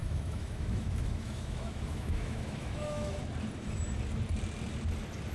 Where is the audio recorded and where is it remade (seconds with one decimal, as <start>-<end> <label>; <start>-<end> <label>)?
0.0-3.2 remade; 3.2-5.3 recorded